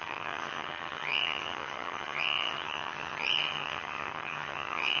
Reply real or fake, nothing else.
fake